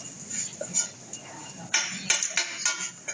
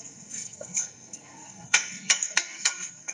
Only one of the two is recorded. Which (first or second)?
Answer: first